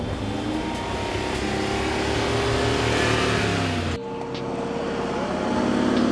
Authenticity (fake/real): real